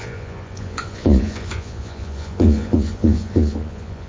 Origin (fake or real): fake